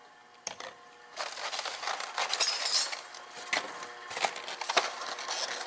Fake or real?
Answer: real